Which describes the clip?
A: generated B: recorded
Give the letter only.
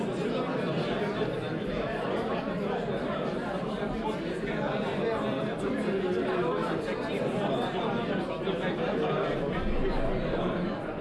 B